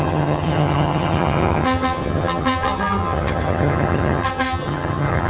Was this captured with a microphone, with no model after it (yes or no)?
no